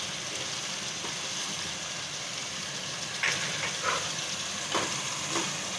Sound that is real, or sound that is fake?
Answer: real